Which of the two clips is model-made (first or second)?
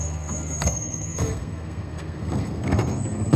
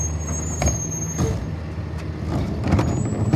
first